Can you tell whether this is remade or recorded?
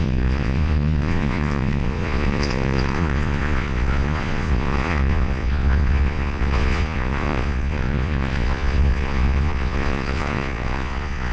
remade